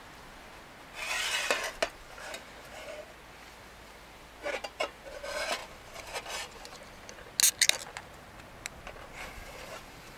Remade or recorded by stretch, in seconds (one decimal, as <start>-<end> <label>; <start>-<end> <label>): 0.0-10.2 recorded